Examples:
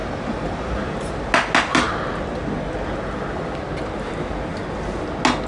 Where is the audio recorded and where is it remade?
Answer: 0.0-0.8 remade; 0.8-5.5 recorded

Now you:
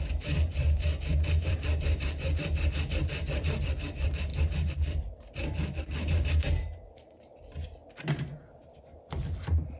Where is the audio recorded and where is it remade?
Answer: 0.0-4.3 remade; 4.3-5.2 recorded; 5.2-7.3 remade; 7.3-8.8 recorded; 8.8-9.8 remade

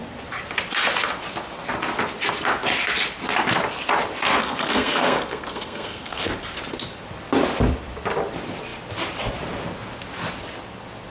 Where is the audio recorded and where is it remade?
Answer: 0.0-4.4 recorded; 4.4-6.3 remade; 6.3-11.1 recorded